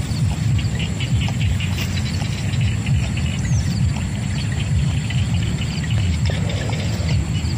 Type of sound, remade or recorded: recorded